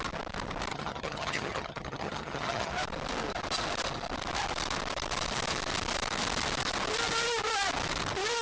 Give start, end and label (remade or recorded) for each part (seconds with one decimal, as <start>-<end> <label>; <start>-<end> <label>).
0.0-0.7 recorded; 0.7-2.7 remade; 2.7-8.4 recorded